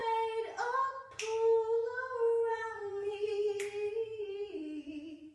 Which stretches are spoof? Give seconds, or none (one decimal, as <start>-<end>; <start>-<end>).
2.5-3.5; 4.2-5.3